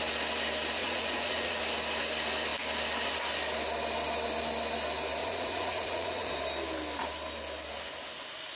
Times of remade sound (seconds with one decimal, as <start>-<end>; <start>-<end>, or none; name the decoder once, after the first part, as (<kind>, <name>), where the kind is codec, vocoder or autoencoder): 0.8-1.6 (vocoder, Vocos); 5.2-6.3